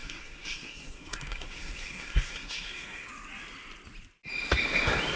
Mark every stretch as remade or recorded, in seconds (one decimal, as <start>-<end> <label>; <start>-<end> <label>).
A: 0.0-3.1 remade; 3.1-5.2 recorded